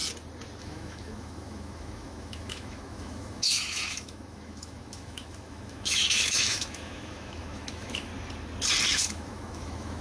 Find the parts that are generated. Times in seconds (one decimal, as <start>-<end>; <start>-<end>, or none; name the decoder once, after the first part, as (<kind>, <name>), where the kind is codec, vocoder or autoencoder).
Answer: 0.6-8.1 (autoencoder, DAC-VAE); 8.9-10.0